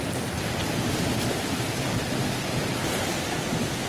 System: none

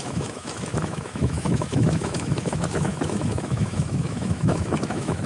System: autoencoder, DAC-VAE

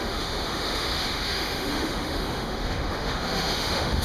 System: autoencoder, DAC-VAE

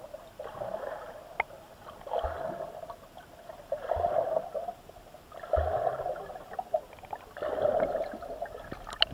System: none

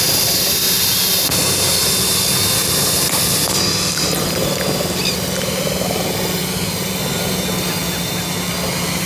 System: none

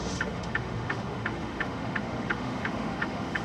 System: autoencoder, DAC-VAE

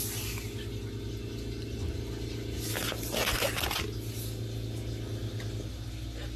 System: none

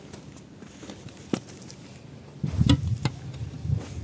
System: none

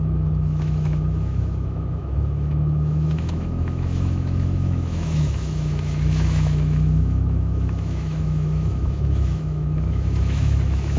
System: autoencoder, DAC-VAE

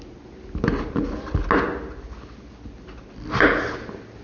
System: none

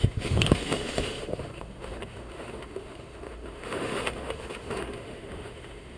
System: autoencoder, DAC-VAE